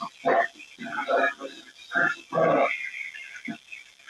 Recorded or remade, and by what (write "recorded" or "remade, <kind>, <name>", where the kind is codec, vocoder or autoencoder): recorded